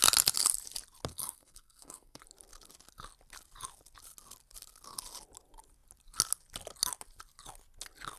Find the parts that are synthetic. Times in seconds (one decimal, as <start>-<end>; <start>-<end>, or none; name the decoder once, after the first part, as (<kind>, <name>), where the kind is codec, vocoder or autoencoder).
1.1-2.2 (codec, SNAC)